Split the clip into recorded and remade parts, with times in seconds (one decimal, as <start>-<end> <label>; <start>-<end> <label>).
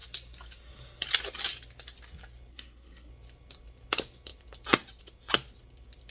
0.0-2.5 recorded; 2.5-3.1 remade; 3.1-6.1 recorded